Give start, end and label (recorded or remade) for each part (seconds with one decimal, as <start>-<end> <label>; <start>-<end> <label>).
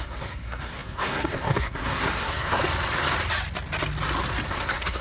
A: 0.0-2.6 remade; 2.6-4.5 recorded; 4.5-5.0 remade